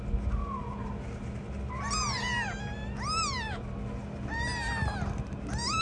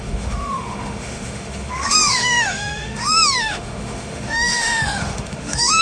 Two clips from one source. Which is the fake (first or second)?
second